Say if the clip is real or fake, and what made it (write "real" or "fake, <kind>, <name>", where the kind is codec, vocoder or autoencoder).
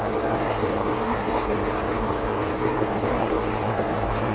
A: fake, codec, SNAC